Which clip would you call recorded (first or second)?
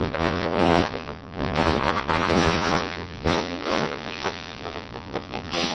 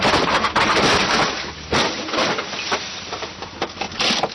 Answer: second